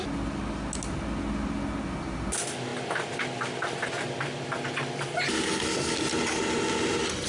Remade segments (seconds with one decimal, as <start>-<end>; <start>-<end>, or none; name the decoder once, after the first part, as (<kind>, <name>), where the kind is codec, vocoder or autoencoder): none